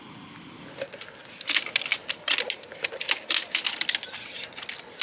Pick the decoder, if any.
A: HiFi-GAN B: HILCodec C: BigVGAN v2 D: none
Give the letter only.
D